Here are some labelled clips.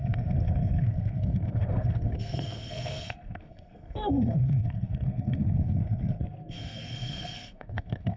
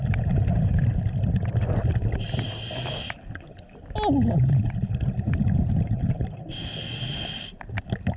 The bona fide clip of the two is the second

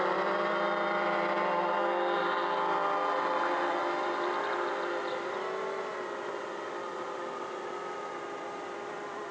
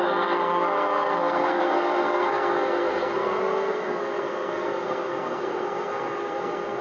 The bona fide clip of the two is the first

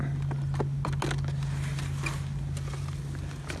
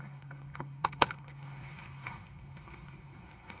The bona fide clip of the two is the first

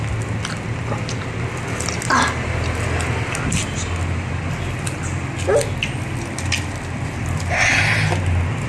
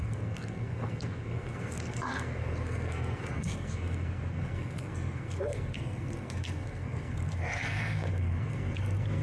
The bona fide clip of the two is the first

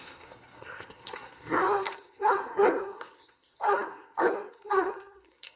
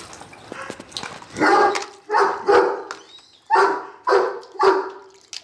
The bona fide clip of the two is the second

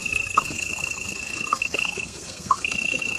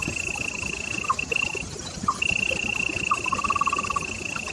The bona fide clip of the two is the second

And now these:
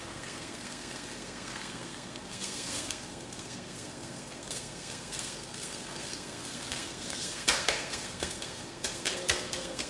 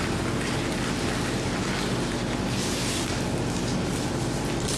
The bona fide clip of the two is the second